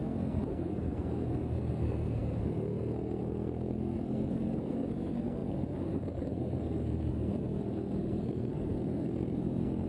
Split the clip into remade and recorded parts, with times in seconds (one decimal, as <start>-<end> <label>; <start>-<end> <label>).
0.0-9.9 remade

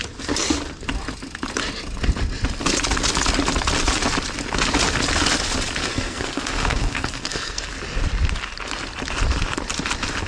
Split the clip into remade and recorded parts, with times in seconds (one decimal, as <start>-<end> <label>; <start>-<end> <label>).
0.0-5.8 recorded; 5.8-7.7 remade; 7.7-10.3 recorded

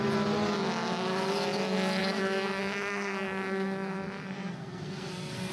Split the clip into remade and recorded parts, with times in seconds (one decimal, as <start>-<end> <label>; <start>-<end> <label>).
0.0-2.0 recorded; 2.0-5.5 remade

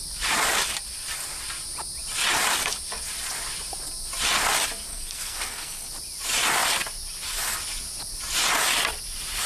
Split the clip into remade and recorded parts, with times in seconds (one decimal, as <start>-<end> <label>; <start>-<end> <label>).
0.0-4.9 recorded; 4.9-5.9 remade; 5.9-9.5 recorded